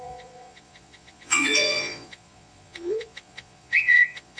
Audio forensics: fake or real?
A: fake